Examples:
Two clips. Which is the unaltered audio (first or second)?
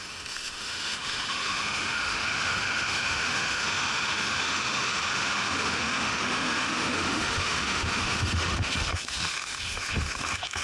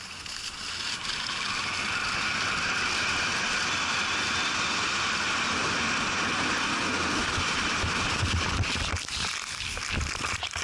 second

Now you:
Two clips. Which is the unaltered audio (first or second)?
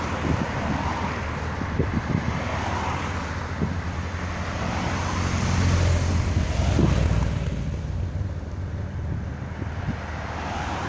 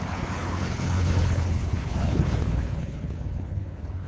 first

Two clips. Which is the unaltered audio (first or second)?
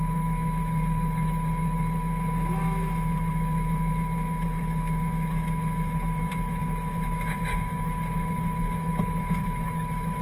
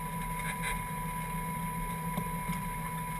second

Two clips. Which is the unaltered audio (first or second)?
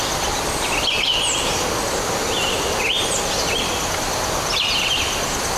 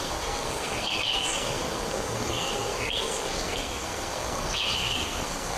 first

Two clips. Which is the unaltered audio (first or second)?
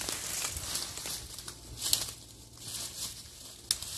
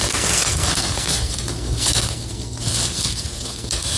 first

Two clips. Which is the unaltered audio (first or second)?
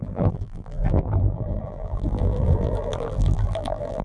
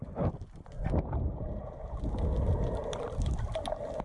second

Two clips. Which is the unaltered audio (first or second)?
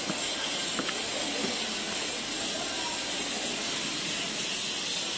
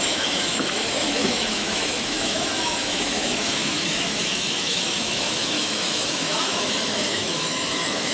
first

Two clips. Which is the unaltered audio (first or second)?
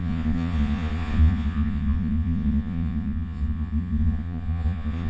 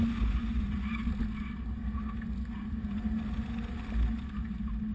second